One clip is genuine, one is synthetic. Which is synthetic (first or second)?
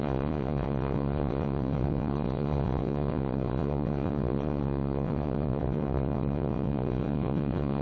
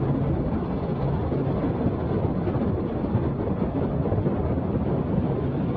first